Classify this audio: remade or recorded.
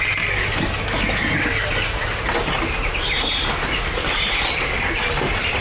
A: recorded